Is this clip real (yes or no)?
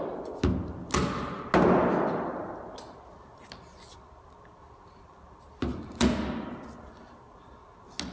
yes